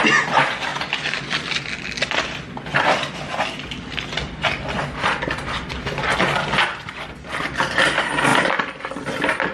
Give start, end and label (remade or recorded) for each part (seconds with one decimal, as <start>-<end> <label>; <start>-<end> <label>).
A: 0.0-6.7 recorded; 6.7-7.8 remade; 7.8-9.5 recorded